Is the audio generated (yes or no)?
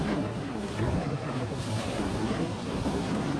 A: yes